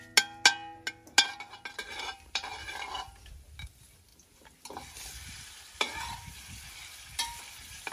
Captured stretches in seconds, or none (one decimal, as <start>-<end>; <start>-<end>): 0.0-2.1; 3.1-7.9